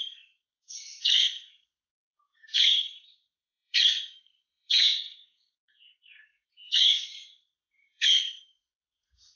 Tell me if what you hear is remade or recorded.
remade